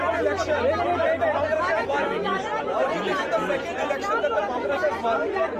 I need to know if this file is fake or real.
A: real